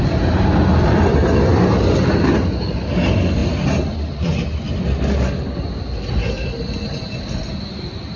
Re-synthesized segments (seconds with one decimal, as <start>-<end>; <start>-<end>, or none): none